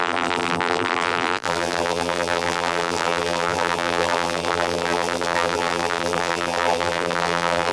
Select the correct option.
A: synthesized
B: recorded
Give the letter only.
A